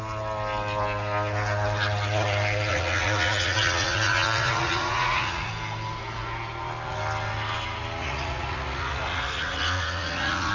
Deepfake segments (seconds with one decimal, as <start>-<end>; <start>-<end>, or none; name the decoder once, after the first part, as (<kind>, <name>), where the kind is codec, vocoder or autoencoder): 2.7-5.5 (vocoder, Vocos); 8.0-10.5